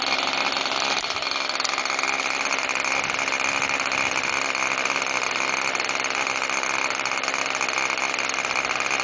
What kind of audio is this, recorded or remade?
recorded